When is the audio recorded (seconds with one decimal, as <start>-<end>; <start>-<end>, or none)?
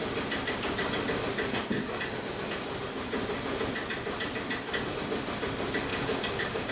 0.0-5.9